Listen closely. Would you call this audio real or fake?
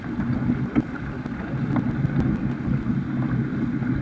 real